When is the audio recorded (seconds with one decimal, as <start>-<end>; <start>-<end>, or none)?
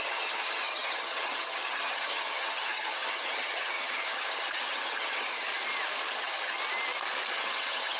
5.5-6.1; 6.6-7.3